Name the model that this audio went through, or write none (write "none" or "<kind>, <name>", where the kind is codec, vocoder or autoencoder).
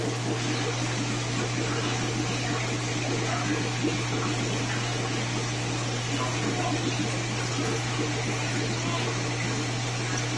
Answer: none